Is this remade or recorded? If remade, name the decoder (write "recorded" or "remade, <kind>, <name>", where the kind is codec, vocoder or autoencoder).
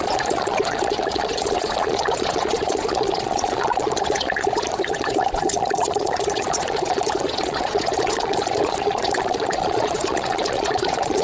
remade, vocoder, Vocos